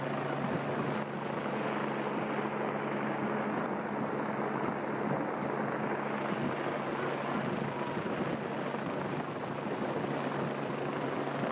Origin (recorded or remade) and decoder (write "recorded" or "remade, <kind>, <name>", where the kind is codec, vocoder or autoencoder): recorded